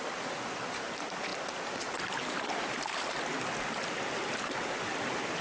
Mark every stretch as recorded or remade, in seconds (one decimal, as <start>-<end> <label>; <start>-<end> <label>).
0.0-5.4 recorded